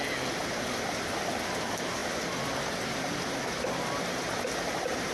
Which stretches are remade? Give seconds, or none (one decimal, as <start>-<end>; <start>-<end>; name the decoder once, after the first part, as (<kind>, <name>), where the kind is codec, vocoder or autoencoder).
none